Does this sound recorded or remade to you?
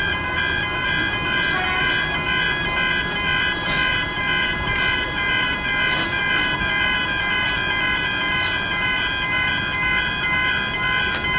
recorded